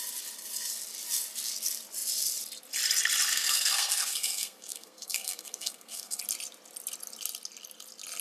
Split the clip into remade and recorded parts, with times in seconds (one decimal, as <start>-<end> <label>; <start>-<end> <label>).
0.0-3.3 recorded; 3.3-6.2 remade; 6.2-8.2 recorded